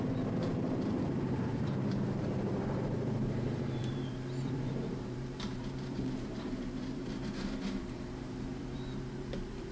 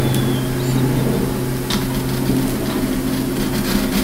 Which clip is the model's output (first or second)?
first